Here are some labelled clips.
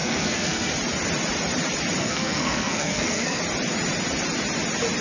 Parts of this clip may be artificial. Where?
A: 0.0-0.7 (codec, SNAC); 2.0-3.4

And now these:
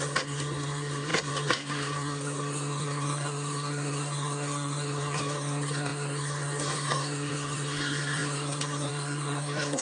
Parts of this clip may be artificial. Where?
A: 0.0-9.8 (codec, SNAC)